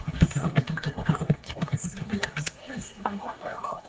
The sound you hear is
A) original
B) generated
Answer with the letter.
B